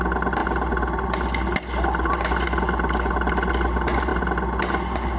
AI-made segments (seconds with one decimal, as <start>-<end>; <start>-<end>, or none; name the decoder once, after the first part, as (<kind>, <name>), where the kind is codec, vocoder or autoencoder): none